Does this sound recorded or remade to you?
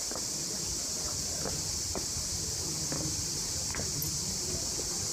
recorded